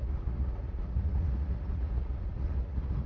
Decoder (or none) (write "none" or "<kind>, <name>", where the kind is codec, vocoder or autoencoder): vocoder, Vocos